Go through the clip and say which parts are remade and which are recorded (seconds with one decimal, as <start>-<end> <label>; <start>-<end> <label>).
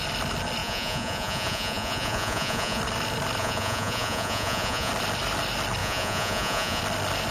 0.0-0.6 recorded; 0.6-2.8 remade; 2.8-3.4 recorded; 3.4-4.9 remade; 4.9-5.8 recorded; 5.8-6.8 remade; 6.8-7.3 recorded